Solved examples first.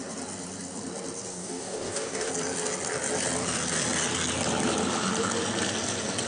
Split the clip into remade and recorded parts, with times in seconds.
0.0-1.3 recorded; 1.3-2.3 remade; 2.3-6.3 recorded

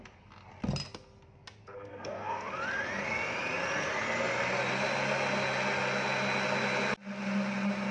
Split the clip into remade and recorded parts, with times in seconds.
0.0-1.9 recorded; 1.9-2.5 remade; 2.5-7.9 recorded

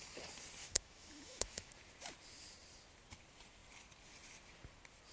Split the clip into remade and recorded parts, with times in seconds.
0.0-0.6 recorded; 0.6-1.7 remade; 1.7-5.1 recorded

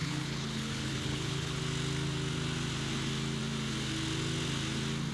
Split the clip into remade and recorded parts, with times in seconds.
0.0-1.6 remade; 1.6-5.1 recorded

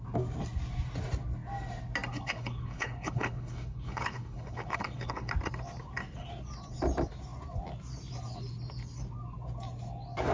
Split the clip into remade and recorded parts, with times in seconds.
0.0-2.1 recorded; 2.1-5.3 remade; 5.3-10.3 recorded

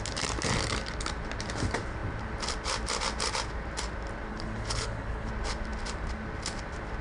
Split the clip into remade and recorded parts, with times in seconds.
0.0-4.3 recorded; 4.3-5.3 remade; 5.3-7.0 recorded